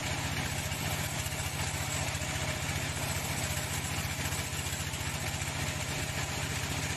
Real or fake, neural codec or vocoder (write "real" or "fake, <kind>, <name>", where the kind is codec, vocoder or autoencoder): real